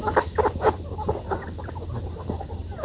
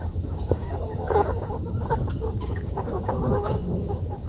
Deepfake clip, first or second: second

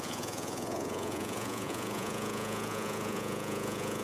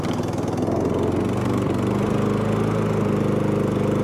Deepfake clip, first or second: first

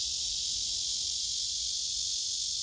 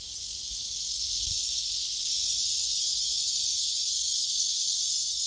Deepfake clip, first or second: second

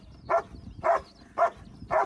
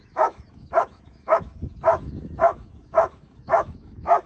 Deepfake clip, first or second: second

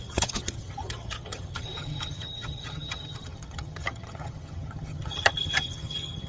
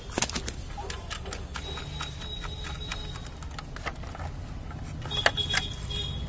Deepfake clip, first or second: first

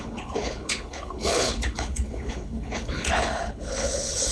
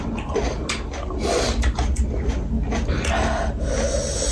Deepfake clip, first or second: first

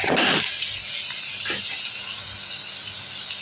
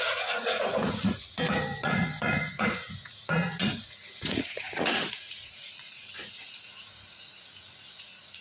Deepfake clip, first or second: second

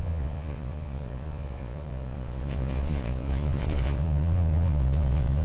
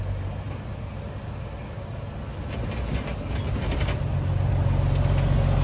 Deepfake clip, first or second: first